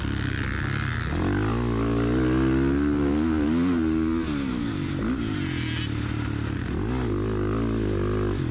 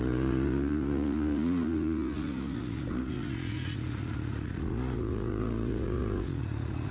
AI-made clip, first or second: second